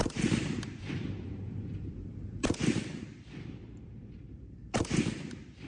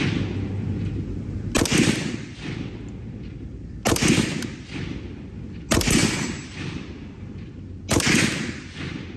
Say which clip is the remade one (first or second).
first